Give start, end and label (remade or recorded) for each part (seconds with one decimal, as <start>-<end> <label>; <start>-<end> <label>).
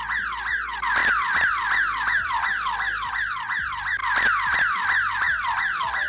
0.0-1.0 recorded; 1.0-3.1 remade; 3.1-6.1 recorded